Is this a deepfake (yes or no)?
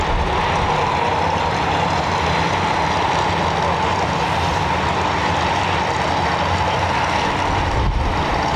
no